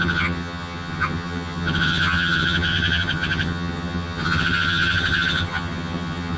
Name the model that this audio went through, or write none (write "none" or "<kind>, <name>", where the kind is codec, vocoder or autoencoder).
vocoder, HiFi-GAN